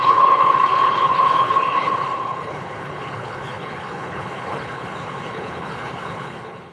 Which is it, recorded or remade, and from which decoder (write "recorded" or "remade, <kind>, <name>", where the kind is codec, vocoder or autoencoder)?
remade, codec, HILCodec